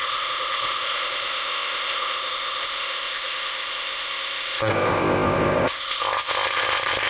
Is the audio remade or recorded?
remade